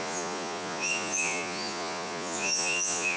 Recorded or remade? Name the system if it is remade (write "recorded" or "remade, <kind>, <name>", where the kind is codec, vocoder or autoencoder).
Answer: remade, vocoder, Vocos